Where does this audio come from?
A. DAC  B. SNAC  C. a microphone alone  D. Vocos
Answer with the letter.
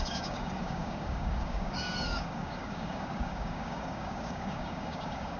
A